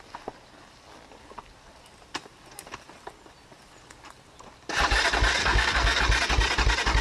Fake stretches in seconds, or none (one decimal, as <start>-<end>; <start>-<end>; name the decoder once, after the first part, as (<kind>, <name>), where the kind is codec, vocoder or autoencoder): 5.4-6.0 (codec, SNAC)